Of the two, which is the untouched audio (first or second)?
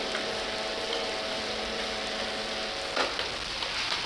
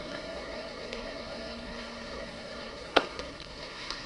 first